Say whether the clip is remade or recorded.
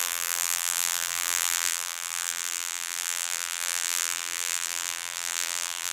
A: remade